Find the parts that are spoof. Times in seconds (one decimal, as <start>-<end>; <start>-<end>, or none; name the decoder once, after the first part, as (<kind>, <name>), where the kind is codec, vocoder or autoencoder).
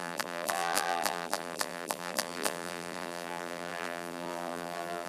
0.0-5.1 (vocoder, BigVGAN v2)